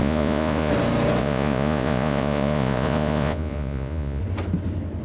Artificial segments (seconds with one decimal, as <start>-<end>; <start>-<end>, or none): 0.0-0.7; 1.2-4.2